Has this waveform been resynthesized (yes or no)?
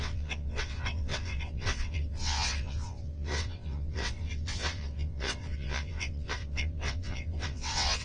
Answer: yes